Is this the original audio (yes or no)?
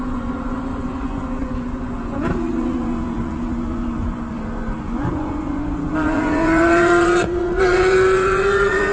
no